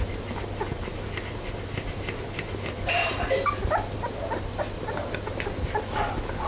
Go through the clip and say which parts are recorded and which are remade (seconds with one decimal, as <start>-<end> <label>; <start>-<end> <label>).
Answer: 0.0-6.5 recorded